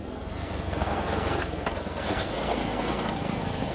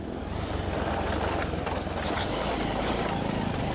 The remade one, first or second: first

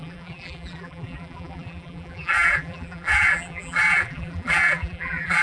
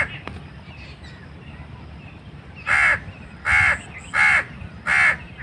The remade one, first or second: first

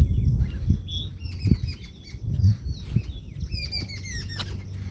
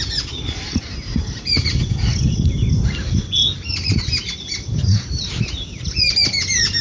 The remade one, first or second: second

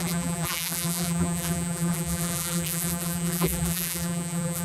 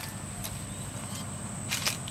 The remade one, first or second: first